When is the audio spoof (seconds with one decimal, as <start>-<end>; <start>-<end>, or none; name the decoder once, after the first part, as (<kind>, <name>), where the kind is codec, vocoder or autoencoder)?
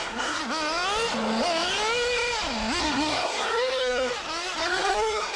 0.0-0.4 (codec, SNAC); 2.8-4.1; 4.6-5.4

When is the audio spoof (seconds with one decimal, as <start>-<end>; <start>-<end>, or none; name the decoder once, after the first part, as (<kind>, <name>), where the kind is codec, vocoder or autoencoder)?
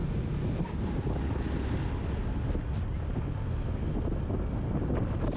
none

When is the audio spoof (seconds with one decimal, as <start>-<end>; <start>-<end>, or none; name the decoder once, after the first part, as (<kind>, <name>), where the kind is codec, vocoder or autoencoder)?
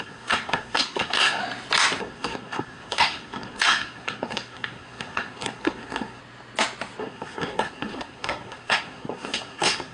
0.0-1.4 (codec, SNAC); 2.0-6.2; 7.0-9.9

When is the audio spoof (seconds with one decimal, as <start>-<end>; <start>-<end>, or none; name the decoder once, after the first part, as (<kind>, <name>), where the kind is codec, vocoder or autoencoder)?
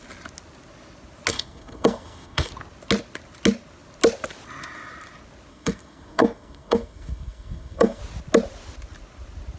1.3-2.5 (codec, SNAC); 5.5-8.0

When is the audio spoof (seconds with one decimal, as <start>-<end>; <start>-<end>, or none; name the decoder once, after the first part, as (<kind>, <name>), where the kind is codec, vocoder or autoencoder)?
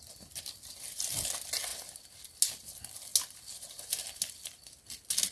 none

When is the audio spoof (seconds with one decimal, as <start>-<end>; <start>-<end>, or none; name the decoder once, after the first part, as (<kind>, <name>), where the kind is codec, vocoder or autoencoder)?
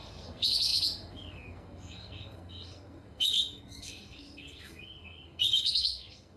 0.0-6.4 (codec, SNAC)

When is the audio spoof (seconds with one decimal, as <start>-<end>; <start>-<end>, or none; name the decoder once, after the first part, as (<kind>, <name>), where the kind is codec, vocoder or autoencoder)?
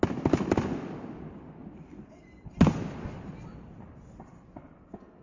none